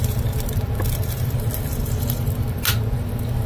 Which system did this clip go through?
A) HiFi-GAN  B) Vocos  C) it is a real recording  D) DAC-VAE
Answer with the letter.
C